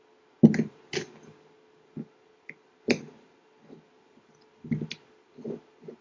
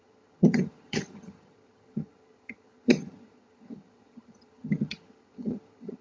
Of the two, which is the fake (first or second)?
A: second